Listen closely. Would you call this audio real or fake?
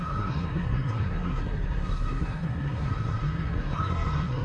fake